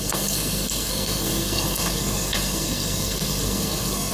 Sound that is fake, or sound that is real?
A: fake